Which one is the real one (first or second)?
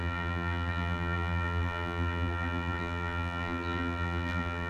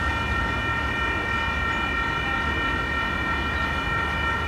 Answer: second